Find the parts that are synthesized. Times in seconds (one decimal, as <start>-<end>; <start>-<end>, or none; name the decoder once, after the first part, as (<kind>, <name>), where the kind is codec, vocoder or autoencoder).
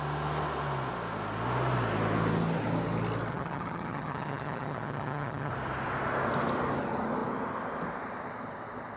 3.3-5.5 (vocoder, HiFi-GAN)